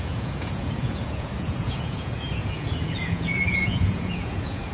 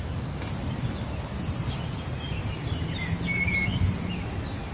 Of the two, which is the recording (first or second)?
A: second